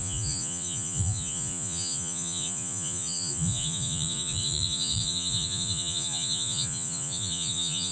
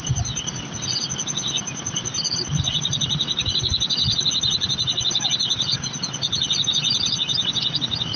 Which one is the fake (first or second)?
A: first